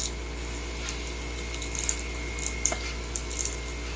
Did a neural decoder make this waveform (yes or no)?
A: yes